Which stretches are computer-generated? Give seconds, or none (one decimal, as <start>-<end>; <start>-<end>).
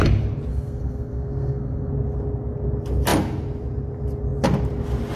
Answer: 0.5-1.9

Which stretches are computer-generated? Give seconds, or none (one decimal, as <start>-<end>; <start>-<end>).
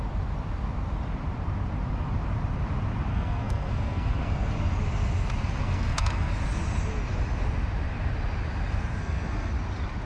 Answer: 3.1-4.5; 5.6-6.3; 9.0-9.5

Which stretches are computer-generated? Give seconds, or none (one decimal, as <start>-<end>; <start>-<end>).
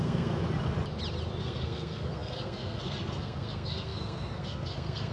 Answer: 0.0-0.4; 1.4-5.1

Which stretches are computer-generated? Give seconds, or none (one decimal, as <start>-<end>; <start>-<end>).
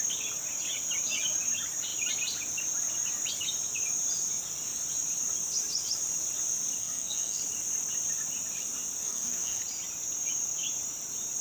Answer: 6.8-7.4; 9.0-9.6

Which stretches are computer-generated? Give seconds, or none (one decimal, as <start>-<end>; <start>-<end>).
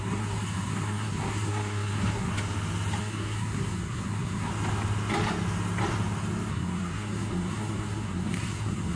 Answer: 0.0-2.3; 3.0-4.5; 6.5-9.0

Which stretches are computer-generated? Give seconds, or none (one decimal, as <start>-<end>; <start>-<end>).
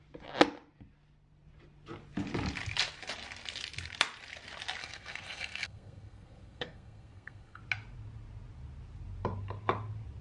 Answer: 4.8-7.6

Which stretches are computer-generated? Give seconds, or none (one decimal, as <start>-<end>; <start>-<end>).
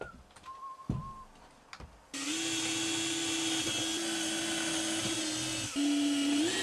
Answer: none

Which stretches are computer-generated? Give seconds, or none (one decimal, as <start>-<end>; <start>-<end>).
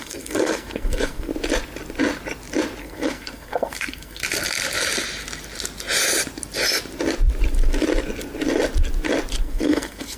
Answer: 0.0-1.3; 2.8-4.2; 9.4-10.2